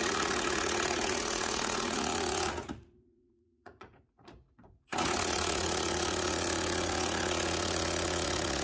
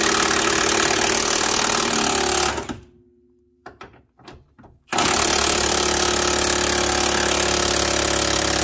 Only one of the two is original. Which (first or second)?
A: second